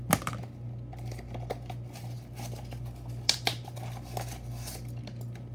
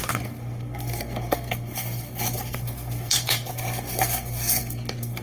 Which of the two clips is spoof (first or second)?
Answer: second